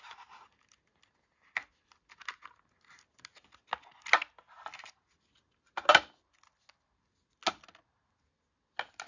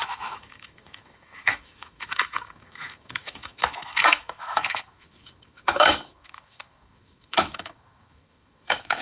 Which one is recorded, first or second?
first